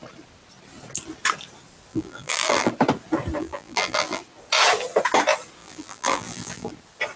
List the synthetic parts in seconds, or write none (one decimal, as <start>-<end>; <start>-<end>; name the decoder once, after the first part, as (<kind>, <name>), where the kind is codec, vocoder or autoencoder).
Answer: 1.9-2.7 (vocoder, BigVGAN v2); 3.4-4.2; 5.6-6.7